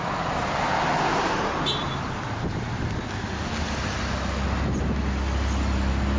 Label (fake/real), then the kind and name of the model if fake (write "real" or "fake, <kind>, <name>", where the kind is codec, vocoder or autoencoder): real